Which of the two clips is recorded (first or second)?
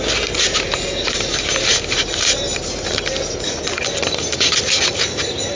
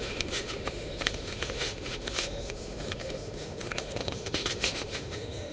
first